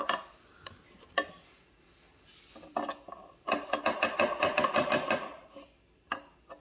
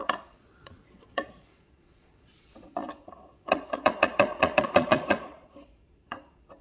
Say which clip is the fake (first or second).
second